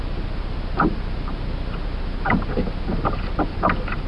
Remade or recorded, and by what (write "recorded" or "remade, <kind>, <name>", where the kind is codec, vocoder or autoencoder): recorded